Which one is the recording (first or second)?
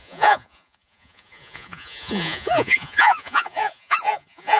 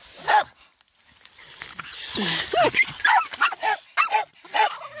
second